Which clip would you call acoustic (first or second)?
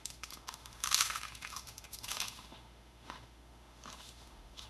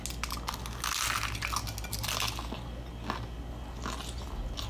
second